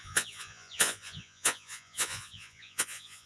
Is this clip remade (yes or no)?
yes